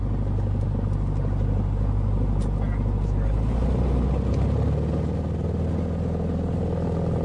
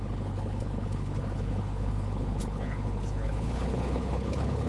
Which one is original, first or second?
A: first